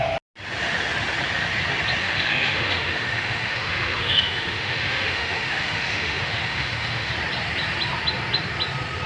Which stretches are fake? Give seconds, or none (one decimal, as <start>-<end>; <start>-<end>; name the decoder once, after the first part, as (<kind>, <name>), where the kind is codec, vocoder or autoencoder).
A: 2.0-7.1 (autoencoder, DAC-VAE)